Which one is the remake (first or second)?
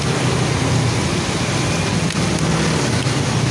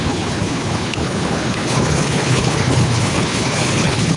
second